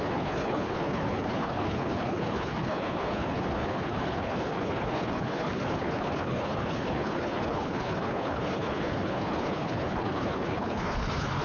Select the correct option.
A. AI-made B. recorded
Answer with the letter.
A